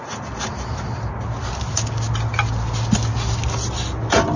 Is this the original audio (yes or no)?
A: yes